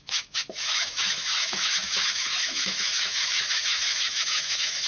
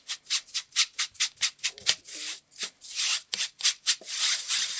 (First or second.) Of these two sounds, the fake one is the first